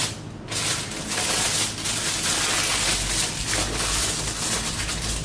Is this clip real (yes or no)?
yes